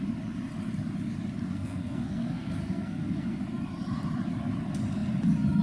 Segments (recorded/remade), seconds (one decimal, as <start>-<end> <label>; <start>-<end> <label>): 0.0-1.5 recorded; 1.5-3.4 remade; 3.4-5.6 recorded